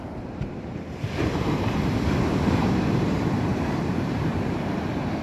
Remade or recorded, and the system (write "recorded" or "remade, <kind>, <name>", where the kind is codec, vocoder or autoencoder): remade, vocoder, BigVGAN v2